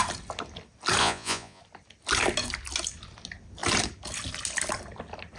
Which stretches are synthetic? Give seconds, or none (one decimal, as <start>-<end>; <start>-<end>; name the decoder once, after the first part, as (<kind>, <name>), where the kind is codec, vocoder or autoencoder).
1.0-1.6 (vocoder, Vocos)